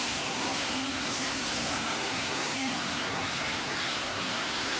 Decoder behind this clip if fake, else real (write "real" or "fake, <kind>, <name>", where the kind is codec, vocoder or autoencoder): fake, codec, SNAC